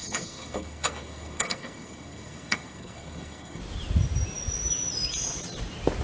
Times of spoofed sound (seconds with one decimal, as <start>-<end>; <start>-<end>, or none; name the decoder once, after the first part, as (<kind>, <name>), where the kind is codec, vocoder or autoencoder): 0.0-3.6 (codec, SNAC)